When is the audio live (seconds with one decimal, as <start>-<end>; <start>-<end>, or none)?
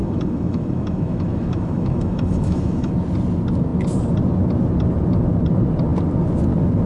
2.9-6.9